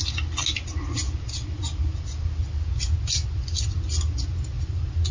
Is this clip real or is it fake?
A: real